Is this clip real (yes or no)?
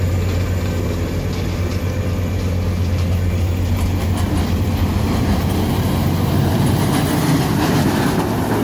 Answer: yes